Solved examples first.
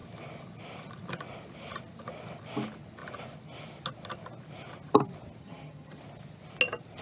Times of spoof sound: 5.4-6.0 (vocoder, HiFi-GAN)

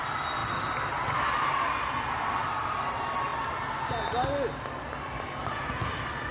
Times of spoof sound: none

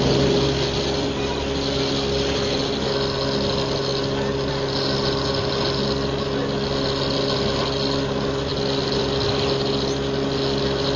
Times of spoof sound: none

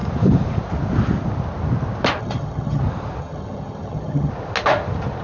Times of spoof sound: 2.2-2.8 (vocoder, HiFi-GAN); 3.2-4.3

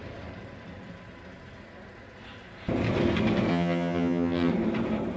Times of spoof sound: 3.5-4.5 (vocoder, HiFi-GAN)